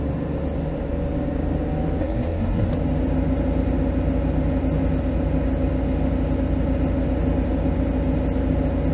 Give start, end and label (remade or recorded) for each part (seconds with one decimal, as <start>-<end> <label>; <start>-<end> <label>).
0.0-2.0 recorded; 2.0-2.7 remade; 2.7-8.9 recorded